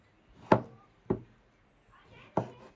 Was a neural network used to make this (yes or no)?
no